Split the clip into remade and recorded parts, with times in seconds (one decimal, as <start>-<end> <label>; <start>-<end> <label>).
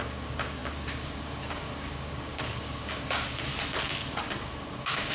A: 0.0-3.5 remade; 3.5-4.2 recorded; 4.2-5.1 remade